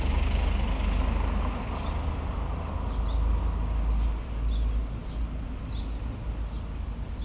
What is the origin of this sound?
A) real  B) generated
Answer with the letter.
A